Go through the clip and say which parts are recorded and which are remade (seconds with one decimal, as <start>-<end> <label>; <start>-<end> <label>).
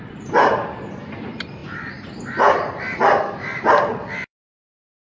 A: 0.0-5.1 remade